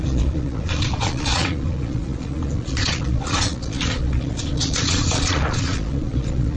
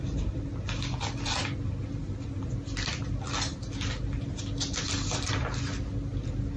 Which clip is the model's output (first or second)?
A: first